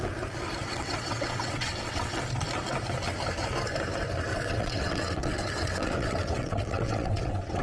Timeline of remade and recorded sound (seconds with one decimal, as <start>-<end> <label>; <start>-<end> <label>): 0.0-0.6 recorded; 0.6-2.2 remade; 2.2-4.3 recorded; 4.3-7.6 remade